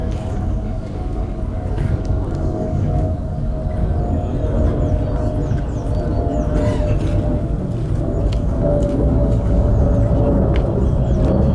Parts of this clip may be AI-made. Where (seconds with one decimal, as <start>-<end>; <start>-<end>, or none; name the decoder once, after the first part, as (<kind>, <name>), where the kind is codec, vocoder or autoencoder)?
0.0-3.6 (codec, DAC); 8.3-9.7